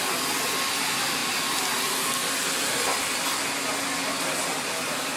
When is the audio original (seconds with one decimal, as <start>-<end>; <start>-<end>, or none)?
0.0-5.2

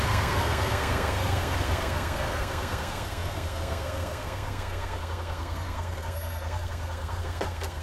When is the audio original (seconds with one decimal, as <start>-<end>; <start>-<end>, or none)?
none